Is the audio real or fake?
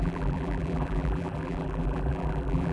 fake